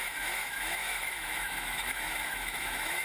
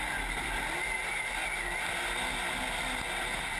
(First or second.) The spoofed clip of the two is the first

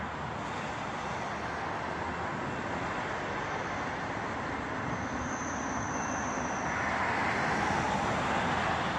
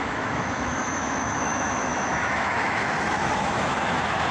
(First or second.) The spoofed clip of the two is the second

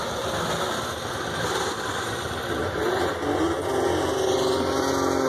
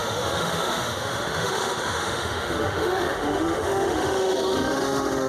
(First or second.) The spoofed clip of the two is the second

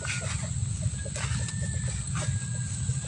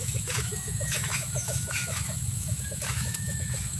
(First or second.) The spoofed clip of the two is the second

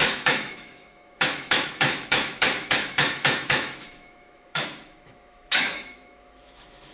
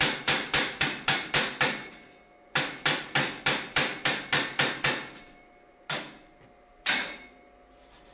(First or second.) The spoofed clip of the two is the first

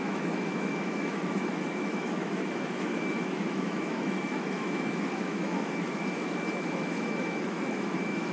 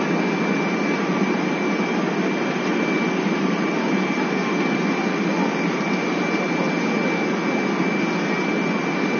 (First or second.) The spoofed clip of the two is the first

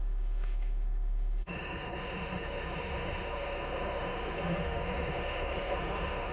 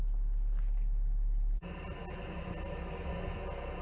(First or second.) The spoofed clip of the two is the first